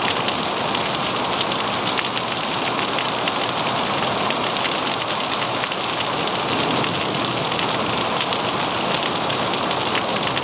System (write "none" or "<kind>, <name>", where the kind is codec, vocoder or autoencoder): none